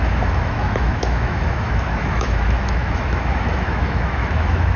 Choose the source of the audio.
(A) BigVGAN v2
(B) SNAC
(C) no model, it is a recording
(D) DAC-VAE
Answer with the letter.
D